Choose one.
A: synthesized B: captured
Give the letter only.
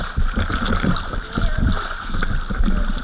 B